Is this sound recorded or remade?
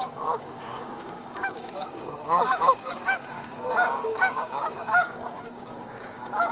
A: remade